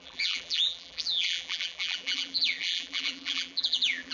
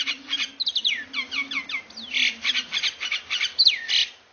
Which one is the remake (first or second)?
first